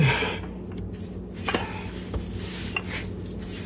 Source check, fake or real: real